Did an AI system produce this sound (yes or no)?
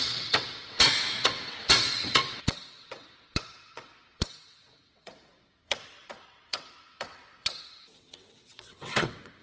yes